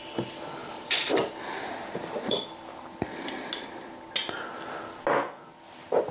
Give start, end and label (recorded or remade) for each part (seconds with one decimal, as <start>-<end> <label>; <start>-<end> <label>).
0.0-0.6 recorded; 0.6-1.3 remade; 1.3-6.1 recorded

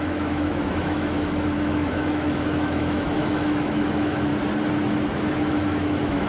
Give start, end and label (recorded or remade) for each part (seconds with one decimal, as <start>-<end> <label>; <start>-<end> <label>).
0.0-4.3 remade; 4.3-5.5 recorded; 5.5-6.3 remade

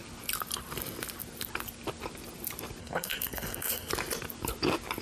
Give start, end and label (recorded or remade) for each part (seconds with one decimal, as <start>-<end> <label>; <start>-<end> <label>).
0.0-2.8 recorded; 2.8-3.9 remade; 3.9-5.0 recorded

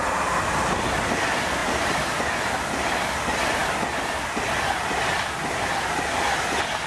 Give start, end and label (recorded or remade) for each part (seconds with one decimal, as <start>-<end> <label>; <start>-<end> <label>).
0.0-6.9 recorded

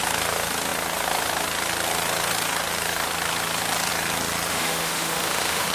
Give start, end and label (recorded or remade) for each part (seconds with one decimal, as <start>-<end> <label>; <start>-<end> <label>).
0.0-4.5 recorded; 4.5-5.7 remade

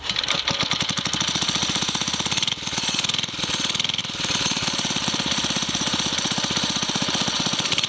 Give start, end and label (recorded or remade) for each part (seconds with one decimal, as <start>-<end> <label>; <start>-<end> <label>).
0.0-1.6 recorded; 1.6-2.5 remade; 2.5-4.0 recorded; 4.0-7.4 remade; 7.4-7.9 recorded

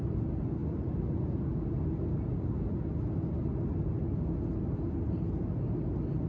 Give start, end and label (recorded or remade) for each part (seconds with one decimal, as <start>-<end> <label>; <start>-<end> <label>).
0.0-6.3 recorded

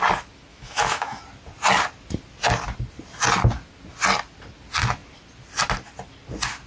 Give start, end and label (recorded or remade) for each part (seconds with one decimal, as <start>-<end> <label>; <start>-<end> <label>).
0.0-0.5 recorded; 0.5-1.2 remade; 1.2-6.7 recorded